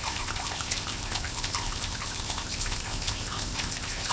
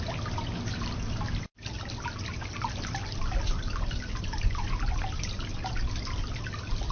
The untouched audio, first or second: second